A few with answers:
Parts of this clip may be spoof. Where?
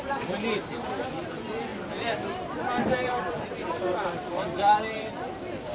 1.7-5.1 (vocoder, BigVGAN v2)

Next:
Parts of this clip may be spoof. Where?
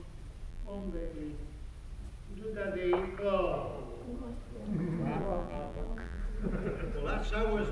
0.5-1.1 (vocoder, BigVGAN v2); 5.2-6.2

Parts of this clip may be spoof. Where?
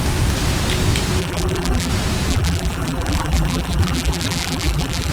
1.2-1.9 (vocoder, BigVGAN v2); 2.3-5.1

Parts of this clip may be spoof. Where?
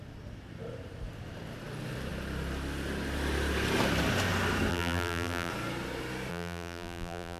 4.7-5.5 (vocoder, BigVGAN v2); 6.3-7.4